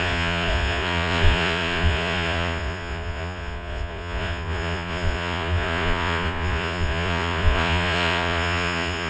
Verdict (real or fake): fake